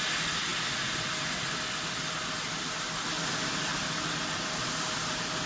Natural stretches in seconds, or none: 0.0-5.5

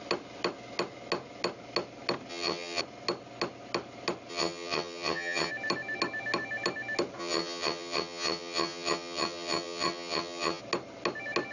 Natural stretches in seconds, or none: 0.0-2.3; 2.8-4.3; 5.5-7.2; 10.6-11.5

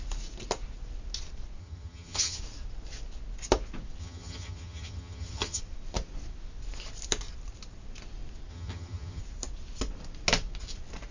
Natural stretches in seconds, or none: 0.0-1.6; 2.4-4.0; 5.6-8.5; 9.2-11.1